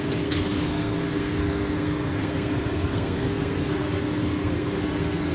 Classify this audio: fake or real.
fake